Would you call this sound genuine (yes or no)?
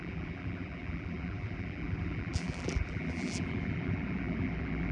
no